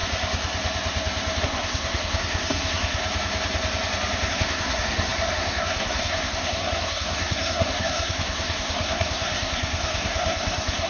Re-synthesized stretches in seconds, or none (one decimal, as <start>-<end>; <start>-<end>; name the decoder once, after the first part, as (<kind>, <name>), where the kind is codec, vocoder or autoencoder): 1.4-3.0 (codec, SNAC); 4.3-10.9